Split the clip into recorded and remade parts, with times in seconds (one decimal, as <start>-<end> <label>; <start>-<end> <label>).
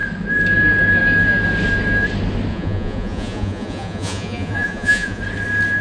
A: 0.0-2.5 recorded; 2.5-5.2 remade; 5.2-5.8 recorded